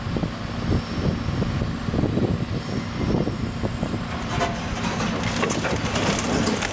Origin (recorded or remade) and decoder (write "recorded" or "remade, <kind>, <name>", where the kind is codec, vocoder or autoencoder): recorded